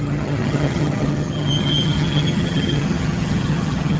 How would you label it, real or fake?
fake